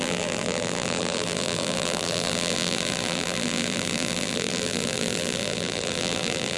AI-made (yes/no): yes